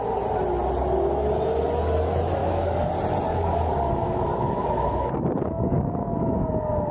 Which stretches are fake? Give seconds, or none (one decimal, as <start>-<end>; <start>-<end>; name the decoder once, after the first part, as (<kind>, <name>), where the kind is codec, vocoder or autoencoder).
2.4-2.9 (codec, DAC); 3.3-6.5